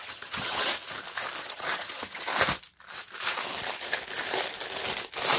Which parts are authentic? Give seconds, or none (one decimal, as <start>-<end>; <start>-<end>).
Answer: 0.7-1.4; 2.3-5.4